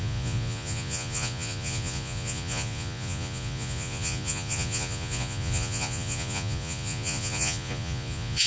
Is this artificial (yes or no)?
yes